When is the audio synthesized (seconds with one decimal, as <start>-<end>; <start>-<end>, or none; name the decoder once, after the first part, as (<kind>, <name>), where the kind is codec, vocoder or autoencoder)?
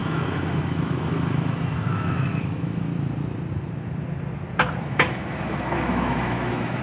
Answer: 0.0-2.9 (autoencoder, DAC-VAE); 4.8-6.8